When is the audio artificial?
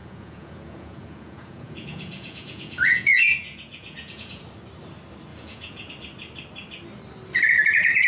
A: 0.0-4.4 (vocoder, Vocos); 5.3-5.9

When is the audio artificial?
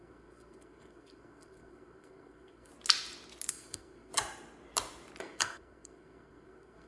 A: 0.0-2.7 (codec, SNAC); 3.5-4.1; 5.2-6.9